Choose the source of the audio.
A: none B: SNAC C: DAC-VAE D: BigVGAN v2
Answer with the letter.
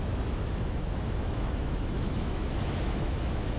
C